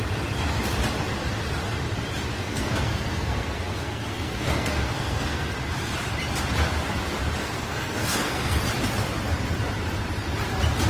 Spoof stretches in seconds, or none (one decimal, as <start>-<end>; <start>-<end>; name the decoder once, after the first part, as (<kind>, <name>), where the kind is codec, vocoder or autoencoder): 2.3-5.5 (codec, SNAC); 7.4-8.6